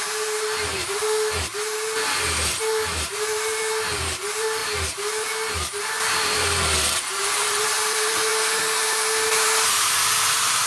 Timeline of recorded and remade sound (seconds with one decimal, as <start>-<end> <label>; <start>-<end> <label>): 0.0-10.7 remade